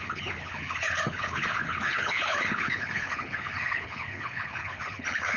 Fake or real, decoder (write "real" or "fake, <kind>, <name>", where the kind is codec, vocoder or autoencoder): fake, codec, HILCodec